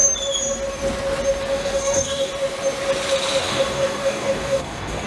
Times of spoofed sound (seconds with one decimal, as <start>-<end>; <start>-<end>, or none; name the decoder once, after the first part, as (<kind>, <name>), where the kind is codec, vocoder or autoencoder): 1.5-2.3 (codec, DAC); 3.4-5.1